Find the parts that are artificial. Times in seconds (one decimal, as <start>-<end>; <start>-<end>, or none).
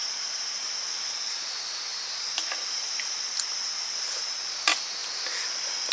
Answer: 0.0-0.8; 1.9-4.5